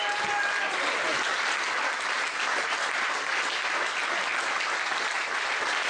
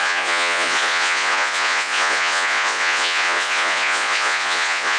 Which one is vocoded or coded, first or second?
second